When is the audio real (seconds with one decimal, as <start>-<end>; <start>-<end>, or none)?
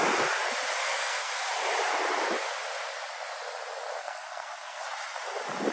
0.0-0.8; 1.3-4.0; 4.8-5.7